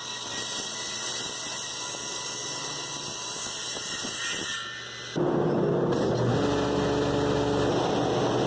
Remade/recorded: recorded